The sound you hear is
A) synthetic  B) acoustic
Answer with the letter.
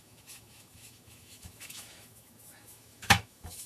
A